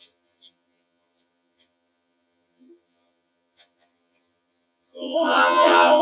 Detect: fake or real fake